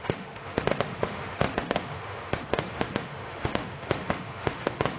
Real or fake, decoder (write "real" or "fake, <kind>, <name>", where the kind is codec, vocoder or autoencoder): fake, autoencoder, DAC-VAE